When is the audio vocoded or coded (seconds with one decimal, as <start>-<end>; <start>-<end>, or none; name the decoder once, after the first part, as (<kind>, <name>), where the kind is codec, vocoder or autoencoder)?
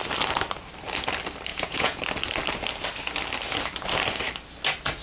1.5-2.0 (vocoder, Vocos)